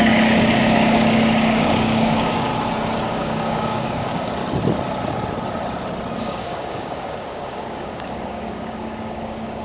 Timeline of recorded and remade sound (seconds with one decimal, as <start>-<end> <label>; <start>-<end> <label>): 0.0-2.5 remade; 2.5-3.1 recorded; 3.1-4.4 remade; 4.4-6.2 recorded; 6.2-9.6 remade